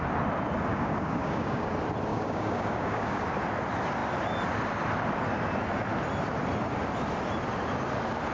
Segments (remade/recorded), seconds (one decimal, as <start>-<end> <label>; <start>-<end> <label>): 0.0-0.7 recorded; 0.7-1.7 remade; 1.7-2.1 recorded; 2.1-3.2 remade; 3.2-8.3 recorded